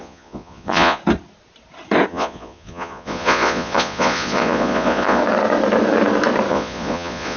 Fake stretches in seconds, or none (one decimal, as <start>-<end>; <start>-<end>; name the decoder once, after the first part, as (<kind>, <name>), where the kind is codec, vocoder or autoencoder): 0.0-1.0 (vocoder, Vocos); 2.1-5.2; 6.5-7.4